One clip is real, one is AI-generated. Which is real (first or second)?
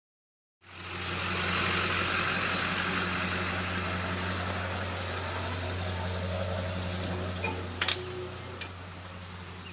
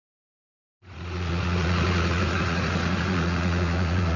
first